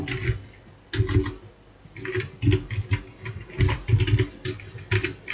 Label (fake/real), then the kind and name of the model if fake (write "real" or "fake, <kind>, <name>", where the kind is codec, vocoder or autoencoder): real